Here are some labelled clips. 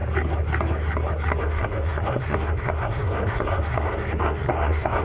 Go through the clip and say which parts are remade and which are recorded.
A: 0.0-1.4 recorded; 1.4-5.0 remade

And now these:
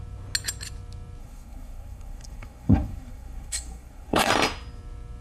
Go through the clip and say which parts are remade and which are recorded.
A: 0.0-1.2 recorded; 1.2-4.3 remade; 4.3-5.2 recorded

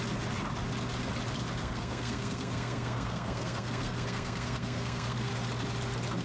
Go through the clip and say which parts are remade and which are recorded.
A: 0.0-1.6 recorded; 1.6-5.3 remade; 5.3-6.2 recorded

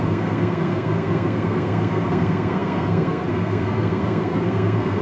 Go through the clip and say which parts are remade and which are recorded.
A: 0.0-5.0 remade